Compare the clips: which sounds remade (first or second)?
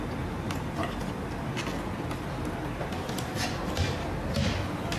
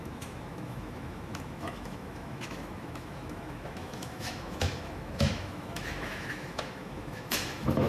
second